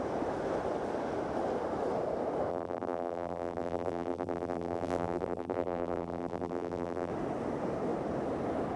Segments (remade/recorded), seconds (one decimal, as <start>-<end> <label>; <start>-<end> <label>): 0.0-2.5 recorded; 2.5-7.1 remade; 7.1-8.8 recorded